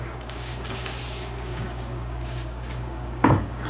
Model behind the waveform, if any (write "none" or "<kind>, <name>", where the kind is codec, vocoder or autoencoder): codec, DAC